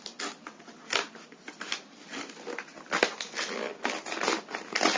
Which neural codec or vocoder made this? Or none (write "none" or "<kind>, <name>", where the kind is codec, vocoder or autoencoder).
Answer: none